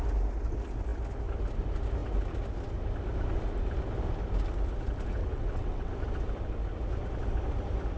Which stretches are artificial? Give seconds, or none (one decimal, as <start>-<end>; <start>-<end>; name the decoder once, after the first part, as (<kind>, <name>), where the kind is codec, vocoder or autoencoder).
5.2-5.9 (vocoder, WaveNeXt)